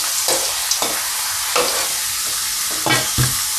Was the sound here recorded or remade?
recorded